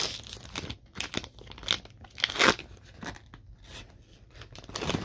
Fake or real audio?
real